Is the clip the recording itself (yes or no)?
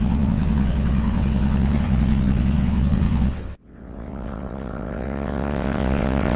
no